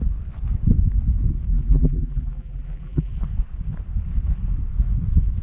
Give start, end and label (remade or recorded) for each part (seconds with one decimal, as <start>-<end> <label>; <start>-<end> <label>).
0.0-1.5 recorded; 1.5-3.1 remade; 3.1-5.4 recorded